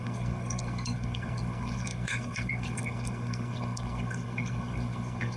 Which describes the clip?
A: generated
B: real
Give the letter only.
A